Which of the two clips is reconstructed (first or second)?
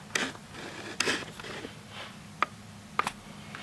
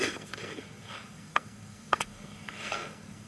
second